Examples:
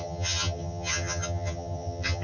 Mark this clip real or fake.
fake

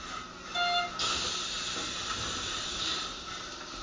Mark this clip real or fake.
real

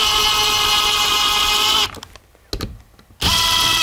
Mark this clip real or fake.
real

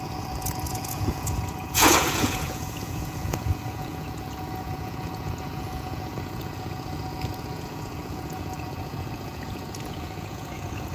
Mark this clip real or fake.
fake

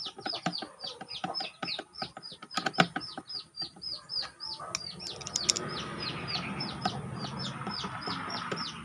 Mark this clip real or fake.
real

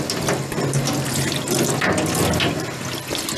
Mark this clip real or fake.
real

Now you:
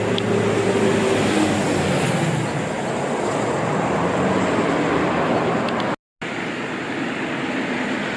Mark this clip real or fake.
real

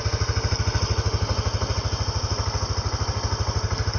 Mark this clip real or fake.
real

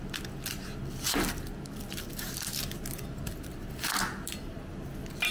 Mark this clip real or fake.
real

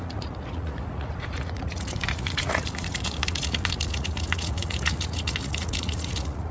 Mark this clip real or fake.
fake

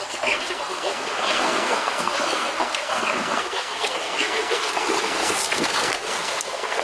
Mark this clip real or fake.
fake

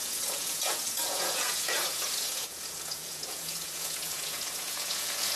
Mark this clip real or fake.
fake